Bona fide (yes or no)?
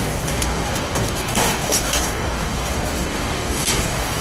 no